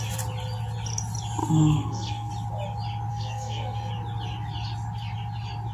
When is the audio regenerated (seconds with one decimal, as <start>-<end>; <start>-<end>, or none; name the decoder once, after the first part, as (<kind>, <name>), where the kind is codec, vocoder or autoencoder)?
1.4-2.3 (codec, SNAC); 3.1-3.9